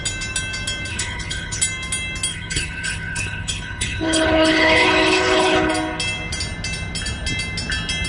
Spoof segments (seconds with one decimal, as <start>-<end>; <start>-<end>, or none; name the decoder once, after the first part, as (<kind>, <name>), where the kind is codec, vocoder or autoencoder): 0.9-1.6 (codec, HILCodec); 2.3-5.7